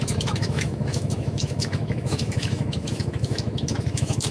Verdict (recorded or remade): remade